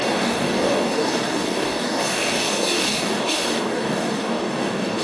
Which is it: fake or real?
fake